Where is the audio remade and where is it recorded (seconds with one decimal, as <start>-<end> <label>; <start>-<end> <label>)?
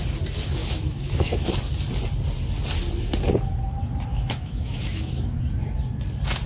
0.0-0.6 recorded; 0.6-1.4 remade; 1.4-4.1 recorded; 4.1-5.4 remade; 5.4-6.5 recorded